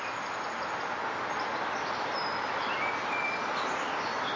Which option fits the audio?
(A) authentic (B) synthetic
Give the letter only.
A